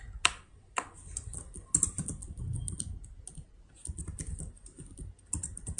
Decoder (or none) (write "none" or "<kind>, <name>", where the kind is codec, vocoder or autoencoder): none